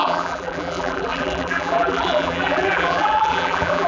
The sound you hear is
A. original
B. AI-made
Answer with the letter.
B